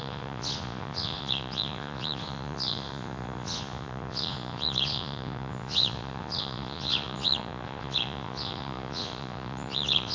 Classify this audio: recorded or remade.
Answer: remade